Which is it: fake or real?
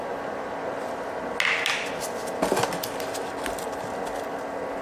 real